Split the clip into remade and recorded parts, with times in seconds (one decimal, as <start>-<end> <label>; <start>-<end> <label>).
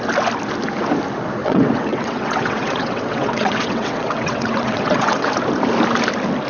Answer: 0.0-1.4 recorded; 1.4-5.3 remade; 5.3-6.5 recorded